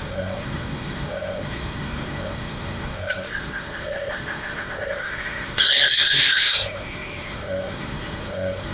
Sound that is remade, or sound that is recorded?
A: remade